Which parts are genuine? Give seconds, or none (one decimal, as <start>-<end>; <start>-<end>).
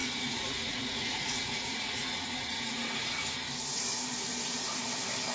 3.2-5.3